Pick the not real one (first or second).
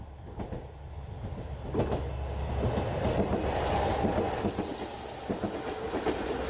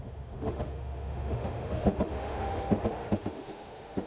second